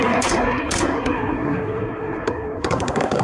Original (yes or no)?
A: no